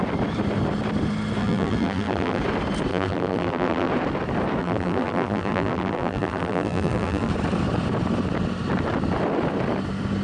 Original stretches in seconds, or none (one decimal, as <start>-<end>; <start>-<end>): 0.0-1.4; 2.4-2.9; 3.9-4.6; 7.3-10.2